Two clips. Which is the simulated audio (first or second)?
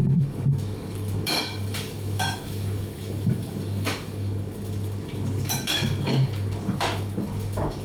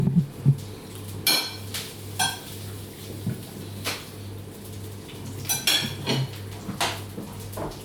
first